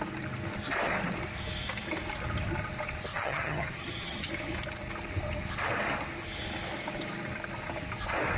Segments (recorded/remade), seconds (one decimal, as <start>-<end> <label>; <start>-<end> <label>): 0.0-3.1 recorded; 3.1-4.3 remade; 4.3-8.4 recorded